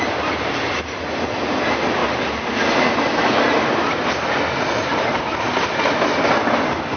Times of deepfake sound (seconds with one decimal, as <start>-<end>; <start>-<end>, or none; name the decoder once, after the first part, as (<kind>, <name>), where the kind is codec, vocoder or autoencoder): none